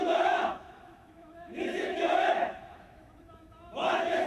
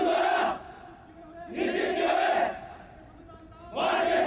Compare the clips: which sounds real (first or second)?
second